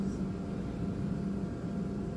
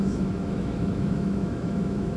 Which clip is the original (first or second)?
first